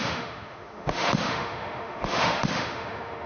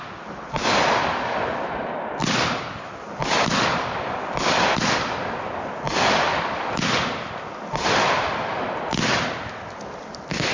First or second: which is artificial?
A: first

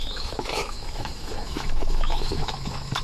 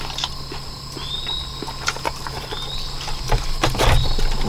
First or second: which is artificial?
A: first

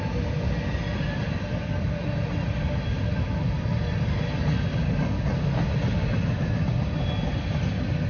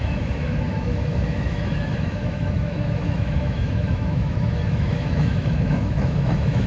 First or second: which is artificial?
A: second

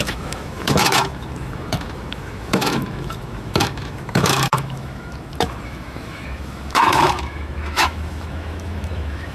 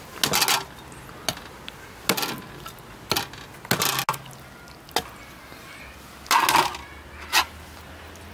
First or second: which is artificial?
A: first